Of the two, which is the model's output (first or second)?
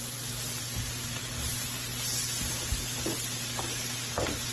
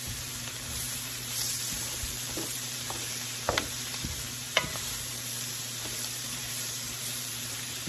second